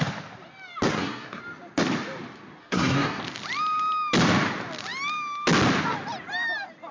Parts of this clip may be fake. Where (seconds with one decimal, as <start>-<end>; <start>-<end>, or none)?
0.9-1.4; 2.6-3.2